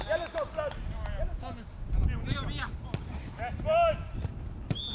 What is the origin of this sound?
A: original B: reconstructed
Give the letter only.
A